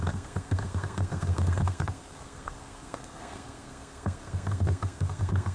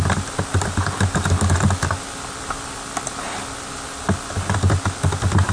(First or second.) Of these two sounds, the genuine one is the second